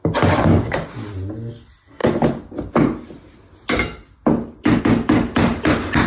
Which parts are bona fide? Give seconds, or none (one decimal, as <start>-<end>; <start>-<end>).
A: 0.0-6.1